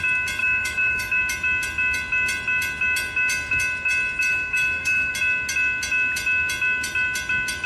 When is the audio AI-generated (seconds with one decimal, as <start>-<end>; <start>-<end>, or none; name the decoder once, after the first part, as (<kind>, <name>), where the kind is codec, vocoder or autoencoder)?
0.4-1.2 (autoencoder, DAC-VAE); 4.3-5.1